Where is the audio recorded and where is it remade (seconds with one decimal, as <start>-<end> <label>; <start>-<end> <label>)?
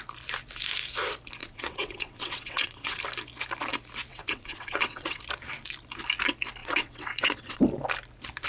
0.0-1.4 recorded; 1.4-3.0 remade; 3.0-4.1 recorded; 4.1-5.2 remade; 5.2-6.6 recorded; 6.6-7.6 remade; 7.6-8.5 recorded